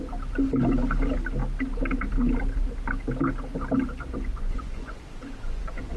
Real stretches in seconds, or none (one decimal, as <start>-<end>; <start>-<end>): 0.0-4.3